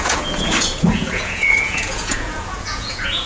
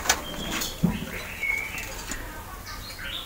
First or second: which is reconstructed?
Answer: first